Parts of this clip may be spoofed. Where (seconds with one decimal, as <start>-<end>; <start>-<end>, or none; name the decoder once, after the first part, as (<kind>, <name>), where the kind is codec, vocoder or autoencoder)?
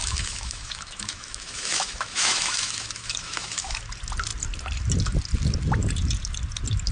0.0-3.8 (autoencoder, DAC-VAE)